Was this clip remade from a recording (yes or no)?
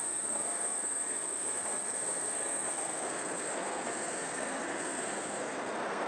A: yes